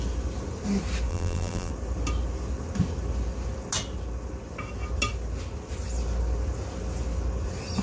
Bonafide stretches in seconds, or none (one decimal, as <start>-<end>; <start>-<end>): 0.0-1.1; 1.7-7.8